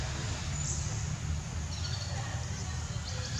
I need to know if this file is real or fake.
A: real